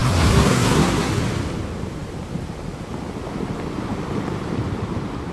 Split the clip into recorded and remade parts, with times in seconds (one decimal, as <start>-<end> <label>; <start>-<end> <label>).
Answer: 0.0-1.2 remade; 1.2-5.3 recorded